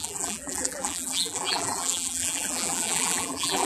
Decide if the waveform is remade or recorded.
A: remade